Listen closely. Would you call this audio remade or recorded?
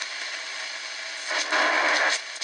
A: recorded